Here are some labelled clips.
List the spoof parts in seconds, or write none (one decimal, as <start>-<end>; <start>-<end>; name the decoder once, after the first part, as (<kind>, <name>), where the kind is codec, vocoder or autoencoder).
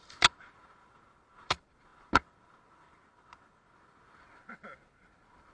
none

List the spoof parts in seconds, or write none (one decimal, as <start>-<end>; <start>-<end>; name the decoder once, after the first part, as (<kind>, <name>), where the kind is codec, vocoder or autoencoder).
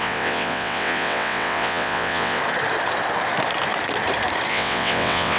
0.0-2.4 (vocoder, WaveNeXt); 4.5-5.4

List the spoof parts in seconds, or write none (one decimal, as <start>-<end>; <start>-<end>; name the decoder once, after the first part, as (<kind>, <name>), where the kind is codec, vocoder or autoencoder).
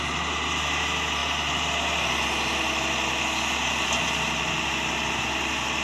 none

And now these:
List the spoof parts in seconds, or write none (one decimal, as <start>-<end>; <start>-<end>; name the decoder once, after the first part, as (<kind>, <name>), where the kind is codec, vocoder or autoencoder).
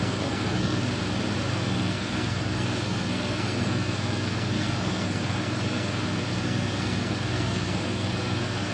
0.0-0.8 (codec, SNAC); 1.5-8.7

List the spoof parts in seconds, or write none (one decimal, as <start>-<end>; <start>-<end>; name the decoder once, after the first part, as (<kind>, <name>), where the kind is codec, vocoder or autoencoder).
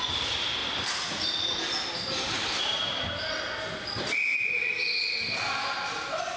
none